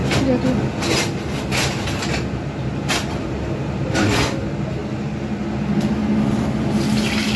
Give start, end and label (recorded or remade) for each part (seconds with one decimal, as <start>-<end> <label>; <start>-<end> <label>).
0.0-7.4 recorded